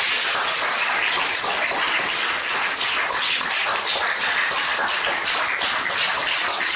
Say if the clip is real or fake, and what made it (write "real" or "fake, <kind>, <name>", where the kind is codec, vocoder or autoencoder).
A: real